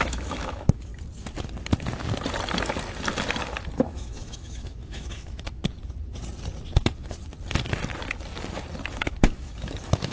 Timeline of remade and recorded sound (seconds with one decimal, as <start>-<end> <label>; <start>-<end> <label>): 0.0-0.9 remade; 0.9-3.8 recorded; 3.8-5.6 remade; 5.6-8.9 recorded; 8.9-10.1 remade